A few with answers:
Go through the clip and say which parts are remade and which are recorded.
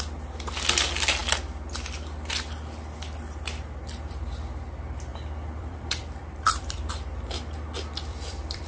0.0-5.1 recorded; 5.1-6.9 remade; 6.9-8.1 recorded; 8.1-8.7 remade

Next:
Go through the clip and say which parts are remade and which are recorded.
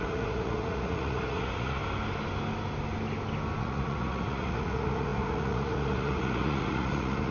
0.0-1.8 remade; 1.8-3.6 recorded; 3.6-7.3 remade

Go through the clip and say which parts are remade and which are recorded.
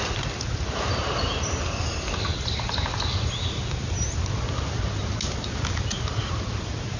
0.0-7.0 recorded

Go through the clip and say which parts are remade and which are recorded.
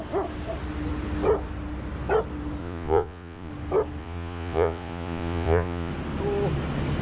0.0-2.6 recorded; 2.6-3.5 remade; 3.5-4.0 recorded; 4.0-5.9 remade; 5.9-7.0 recorded